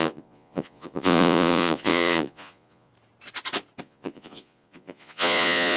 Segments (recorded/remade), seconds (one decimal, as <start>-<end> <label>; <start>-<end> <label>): 0.0-2.9 remade; 2.9-3.8 recorded; 3.8-5.8 remade